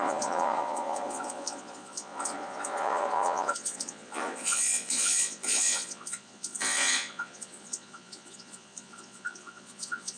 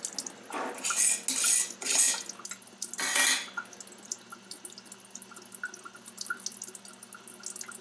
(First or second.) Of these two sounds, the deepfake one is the first